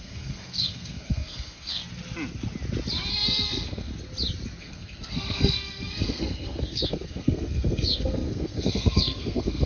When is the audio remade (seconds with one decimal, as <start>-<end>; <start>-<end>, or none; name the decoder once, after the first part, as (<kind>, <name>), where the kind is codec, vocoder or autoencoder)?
0.0-1.8 (codec, SNAC); 3.1-3.9; 4.6-9.7